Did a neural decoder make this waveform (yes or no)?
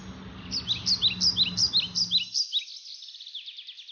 no